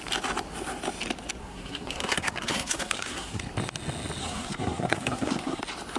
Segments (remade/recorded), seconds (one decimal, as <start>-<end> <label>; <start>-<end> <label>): 0.0-1.4 recorded; 1.4-3.4 remade; 3.4-4.2 recorded; 4.2-5.6 remade; 5.6-6.0 recorded